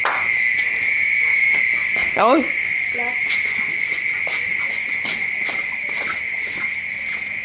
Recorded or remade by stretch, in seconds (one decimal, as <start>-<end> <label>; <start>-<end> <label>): 0.0-2.0 recorded; 2.0-5.3 remade; 5.3-7.4 recorded